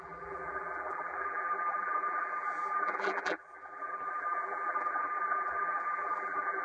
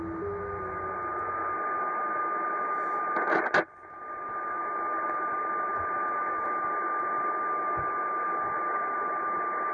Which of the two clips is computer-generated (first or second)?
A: first